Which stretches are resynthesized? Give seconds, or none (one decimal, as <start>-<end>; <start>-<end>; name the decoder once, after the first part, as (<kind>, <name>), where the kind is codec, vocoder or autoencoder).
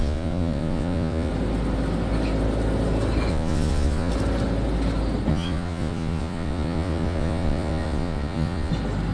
0.0-1.3 (vocoder, Vocos); 3.3-4.1; 5.3-8.7